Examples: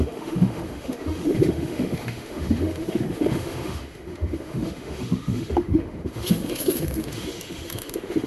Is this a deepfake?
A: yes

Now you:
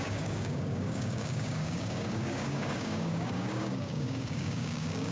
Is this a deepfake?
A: yes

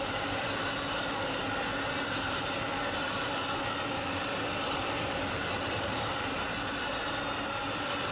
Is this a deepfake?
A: no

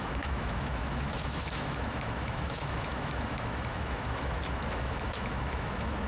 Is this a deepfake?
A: yes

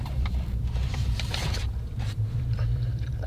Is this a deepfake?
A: yes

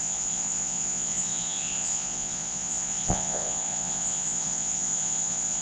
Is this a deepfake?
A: yes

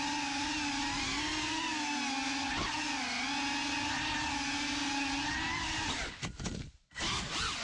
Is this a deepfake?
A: no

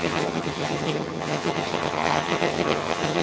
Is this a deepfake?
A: yes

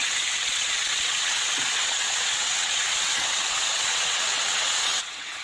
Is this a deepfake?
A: yes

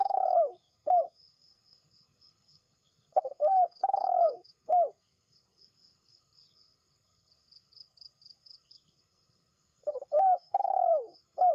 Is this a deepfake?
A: yes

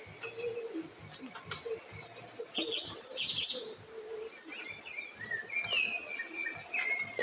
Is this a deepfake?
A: no